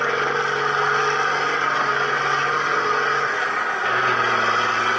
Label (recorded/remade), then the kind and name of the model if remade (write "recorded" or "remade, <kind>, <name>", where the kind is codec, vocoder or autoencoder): recorded